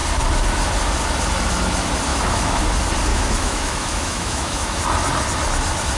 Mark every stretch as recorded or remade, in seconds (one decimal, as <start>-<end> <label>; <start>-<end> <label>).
0.0-2.1 recorded; 2.1-2.6 remade; 2.6-3.1 recorded; 3.1-4.8 remade; 4.8-6.0 recorded